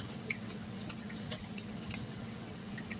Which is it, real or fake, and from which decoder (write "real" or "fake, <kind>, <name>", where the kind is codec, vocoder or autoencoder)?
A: fake, vocoder, WaveNeXt